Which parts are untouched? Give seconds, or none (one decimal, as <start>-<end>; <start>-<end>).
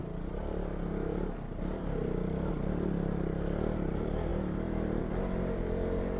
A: 0.0-6.2